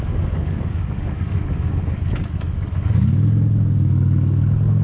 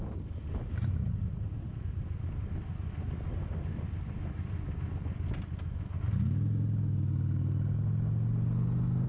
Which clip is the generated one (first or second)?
first